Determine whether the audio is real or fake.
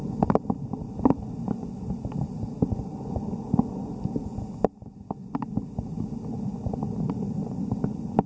real